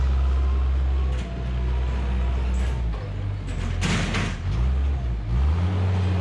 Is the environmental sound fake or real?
real